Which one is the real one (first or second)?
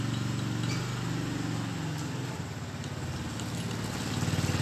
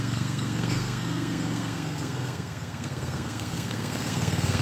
first